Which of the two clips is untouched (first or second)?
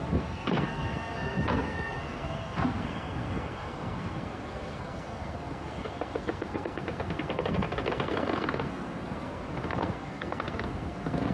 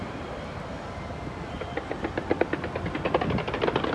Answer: second